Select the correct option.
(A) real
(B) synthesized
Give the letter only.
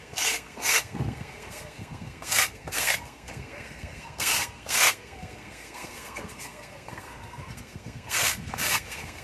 B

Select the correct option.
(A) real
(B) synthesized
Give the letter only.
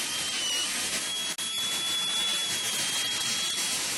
A